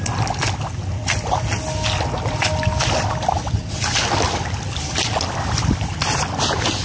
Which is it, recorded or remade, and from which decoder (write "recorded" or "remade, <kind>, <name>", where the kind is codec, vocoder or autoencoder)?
recorded